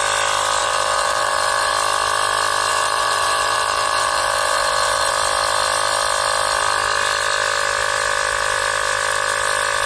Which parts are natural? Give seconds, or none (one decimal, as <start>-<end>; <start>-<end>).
0.0-0.6; 1.7-2.7; 5.1-9.9